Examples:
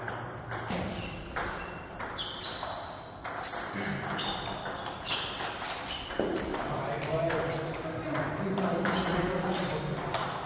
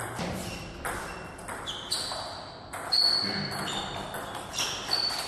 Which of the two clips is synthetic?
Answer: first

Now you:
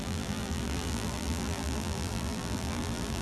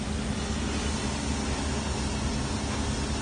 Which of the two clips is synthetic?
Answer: first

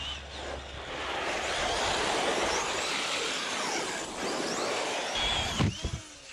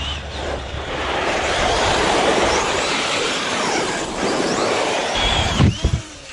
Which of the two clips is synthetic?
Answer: second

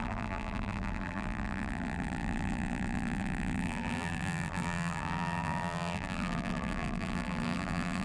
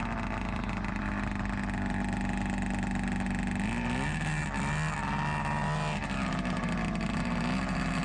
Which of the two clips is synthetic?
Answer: first